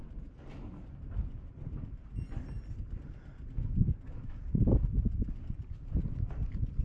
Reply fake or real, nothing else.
real